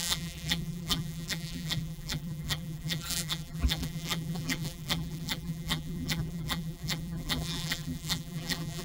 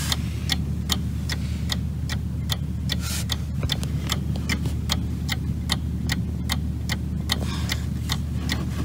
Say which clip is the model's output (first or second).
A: first